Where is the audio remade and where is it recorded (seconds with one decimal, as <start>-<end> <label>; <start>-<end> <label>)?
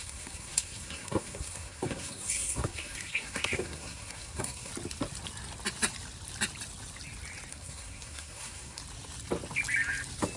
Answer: 0.0-4.7 remade; 4.7-7.5 recorded; 7.5-8.8 remade; 8.8-10.4 recorded